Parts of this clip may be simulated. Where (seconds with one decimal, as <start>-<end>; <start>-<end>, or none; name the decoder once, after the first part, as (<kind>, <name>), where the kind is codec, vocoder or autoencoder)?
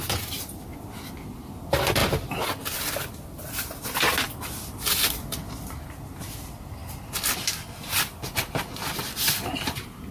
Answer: none